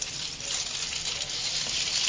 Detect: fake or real real